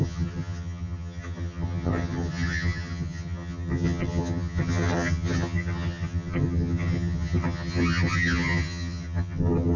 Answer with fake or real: fake